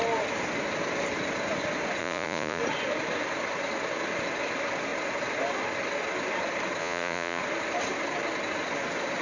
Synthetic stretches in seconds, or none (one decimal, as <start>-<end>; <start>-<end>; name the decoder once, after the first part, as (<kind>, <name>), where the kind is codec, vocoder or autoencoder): 2.0-2.6 (vocoder, Vocos); 6.8-7.4